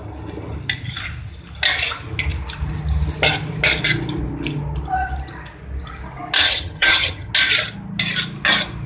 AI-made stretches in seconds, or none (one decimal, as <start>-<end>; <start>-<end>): 6.4-7.3

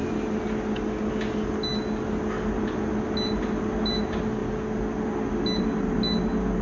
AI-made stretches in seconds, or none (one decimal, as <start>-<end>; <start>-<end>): none

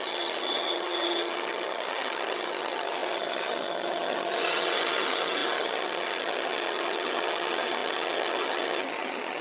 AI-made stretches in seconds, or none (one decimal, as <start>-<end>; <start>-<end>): 0.0-9.4

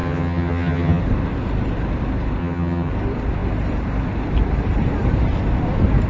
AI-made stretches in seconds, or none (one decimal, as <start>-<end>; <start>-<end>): 0.0-1.0; 2.4-2.9

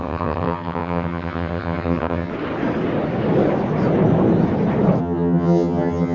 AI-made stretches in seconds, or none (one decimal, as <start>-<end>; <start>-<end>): 0.0-2.3; 5.0-6.1

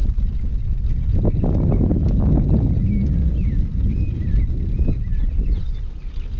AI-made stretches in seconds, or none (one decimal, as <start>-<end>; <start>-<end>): none